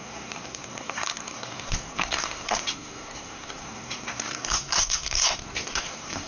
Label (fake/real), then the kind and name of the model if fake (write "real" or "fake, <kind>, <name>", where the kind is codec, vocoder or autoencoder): fake, codec, SNAC